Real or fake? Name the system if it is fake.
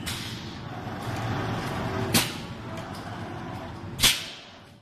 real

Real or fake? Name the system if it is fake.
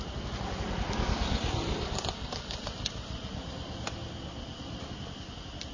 real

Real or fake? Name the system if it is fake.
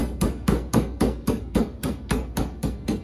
fake, codec, SNAC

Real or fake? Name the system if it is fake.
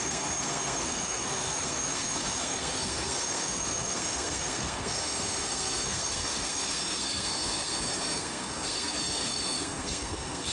fake, codec, SNAC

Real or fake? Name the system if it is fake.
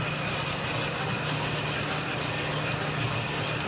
real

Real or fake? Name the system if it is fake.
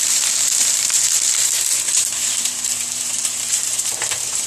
fake, vocoder, BigVGAN v2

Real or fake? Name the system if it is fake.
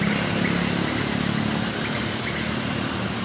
real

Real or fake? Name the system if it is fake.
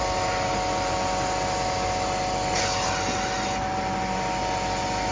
real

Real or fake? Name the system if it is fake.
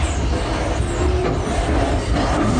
real